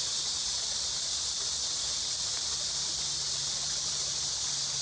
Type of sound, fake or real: real